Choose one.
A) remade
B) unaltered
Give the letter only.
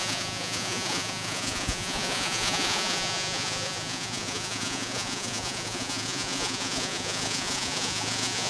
A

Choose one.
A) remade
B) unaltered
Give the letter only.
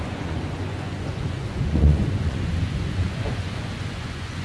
A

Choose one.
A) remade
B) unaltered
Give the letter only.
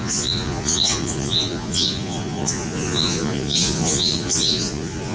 A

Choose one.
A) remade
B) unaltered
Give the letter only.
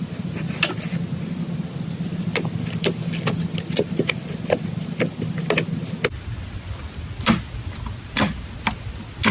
B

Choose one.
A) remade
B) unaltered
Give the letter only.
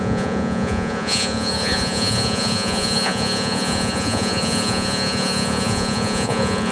A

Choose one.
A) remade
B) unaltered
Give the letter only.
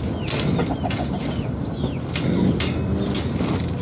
B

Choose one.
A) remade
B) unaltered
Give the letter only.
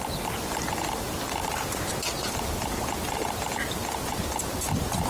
B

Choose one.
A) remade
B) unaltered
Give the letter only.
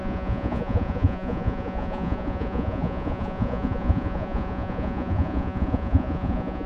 A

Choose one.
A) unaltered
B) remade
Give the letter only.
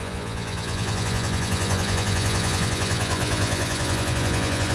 B